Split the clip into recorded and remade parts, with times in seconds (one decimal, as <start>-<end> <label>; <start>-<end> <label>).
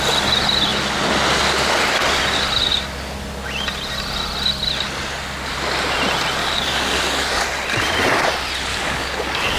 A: 0.0-6.4 recorded; 6.4-7.4 remade; 7.4-8.7 recorded; 8.7-9.6 remade